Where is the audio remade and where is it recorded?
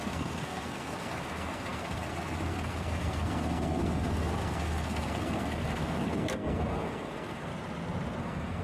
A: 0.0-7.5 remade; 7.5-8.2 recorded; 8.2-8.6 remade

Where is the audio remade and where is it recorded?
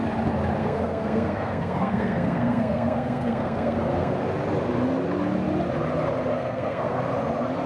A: 0.0-0.6 recorded; 0.6-4.1 remade; 4.1-6.4 recorded; 6.4-7.0 remade; 7.0-7.7 recorded